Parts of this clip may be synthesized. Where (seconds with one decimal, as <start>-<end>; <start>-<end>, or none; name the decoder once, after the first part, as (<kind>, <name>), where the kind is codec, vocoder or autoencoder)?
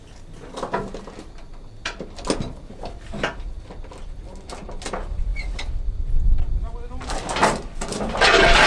5.3-5.8 (vocoder, BigVGAN v2); 7.4-8.7